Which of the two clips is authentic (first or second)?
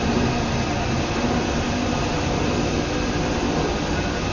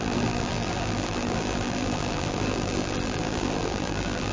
first